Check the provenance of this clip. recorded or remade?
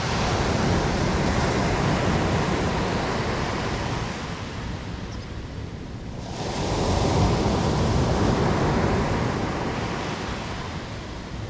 recorded